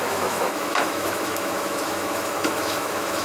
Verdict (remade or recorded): remade